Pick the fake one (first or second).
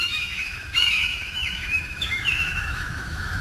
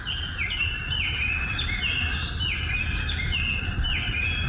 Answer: first